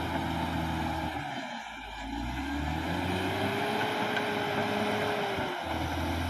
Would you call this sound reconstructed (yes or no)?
no